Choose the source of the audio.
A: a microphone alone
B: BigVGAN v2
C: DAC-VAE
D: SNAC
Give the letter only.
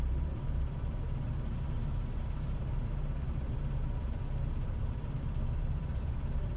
B